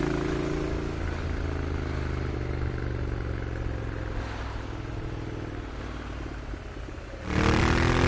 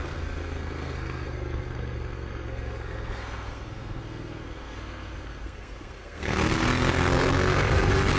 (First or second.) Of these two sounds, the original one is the first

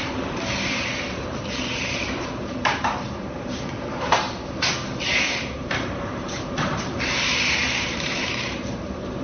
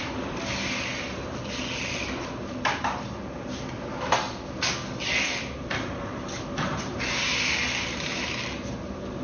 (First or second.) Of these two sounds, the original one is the second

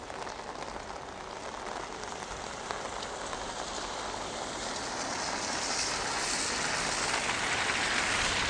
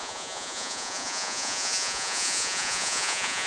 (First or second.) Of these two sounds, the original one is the first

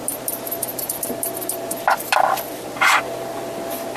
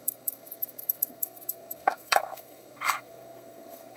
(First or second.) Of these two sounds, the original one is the first